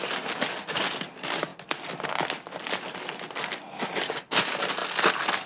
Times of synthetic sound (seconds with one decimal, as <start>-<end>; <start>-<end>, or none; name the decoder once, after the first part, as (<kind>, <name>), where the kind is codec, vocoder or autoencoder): none